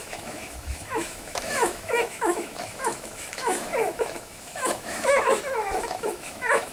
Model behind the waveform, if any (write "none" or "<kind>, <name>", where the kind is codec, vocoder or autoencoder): autoencoder, DAC-VAE